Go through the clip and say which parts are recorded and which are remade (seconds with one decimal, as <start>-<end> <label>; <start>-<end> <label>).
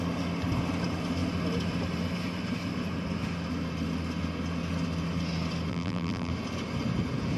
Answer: 0.0-5.7 recorded; 5.7-6.3 remade; 6.3-7.4 recorded